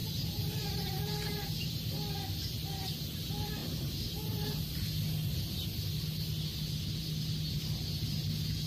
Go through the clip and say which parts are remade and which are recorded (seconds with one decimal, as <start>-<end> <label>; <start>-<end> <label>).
0.0-1.7 remade; 1.7-3.6 recorded; 3.6-4.6 remade; 4.6-8.7 recorded